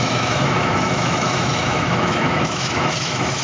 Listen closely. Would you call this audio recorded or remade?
remade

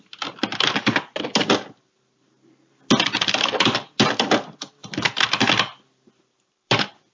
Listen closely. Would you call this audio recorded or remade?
recorded